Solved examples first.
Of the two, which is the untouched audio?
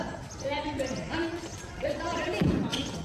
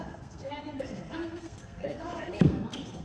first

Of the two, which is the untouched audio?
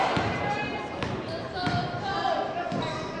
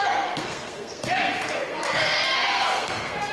first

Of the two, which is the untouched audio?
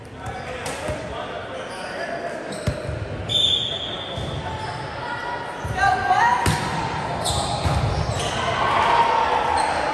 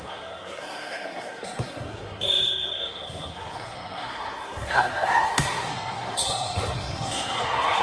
first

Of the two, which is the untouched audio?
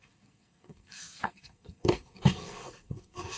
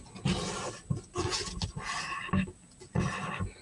second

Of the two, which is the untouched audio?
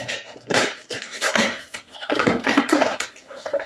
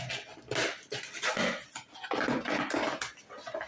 second